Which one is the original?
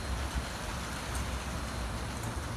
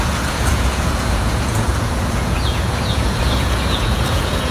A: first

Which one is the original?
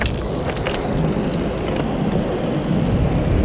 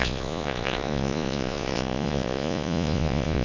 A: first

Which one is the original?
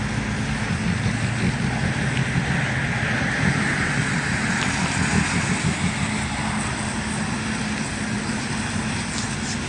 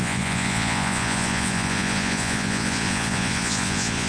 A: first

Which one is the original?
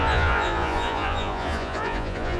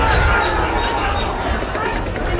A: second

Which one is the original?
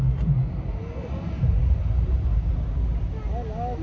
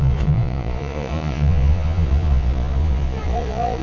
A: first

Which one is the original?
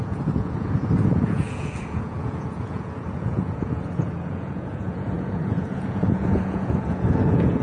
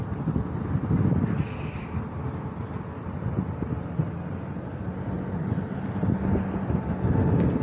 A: second